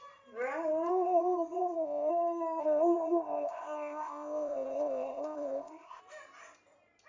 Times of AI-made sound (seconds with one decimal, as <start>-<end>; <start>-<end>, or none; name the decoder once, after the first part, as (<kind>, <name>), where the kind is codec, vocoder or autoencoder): 0.9-2.1 (codec, ZipCodec); 2.6-6.0